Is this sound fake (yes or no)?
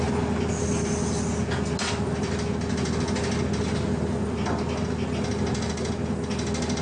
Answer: no